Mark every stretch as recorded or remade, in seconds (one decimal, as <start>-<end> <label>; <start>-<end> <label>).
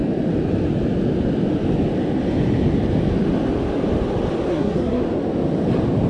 0.0-4.5 recorded; 4.5-5.0 remade; 5.0-6.1 recorded